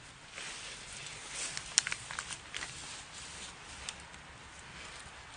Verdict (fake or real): real